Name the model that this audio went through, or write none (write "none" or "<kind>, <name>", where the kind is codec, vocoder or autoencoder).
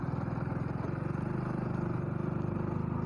none